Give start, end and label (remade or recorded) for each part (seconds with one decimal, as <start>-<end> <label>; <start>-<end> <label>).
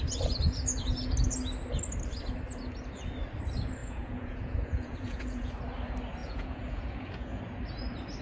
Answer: 0.0-3.8 recorded; 3.8-5.5 remade; 5.5-6.2 recorded; 6.2-7.4 remade; 7.4-8.2 recorded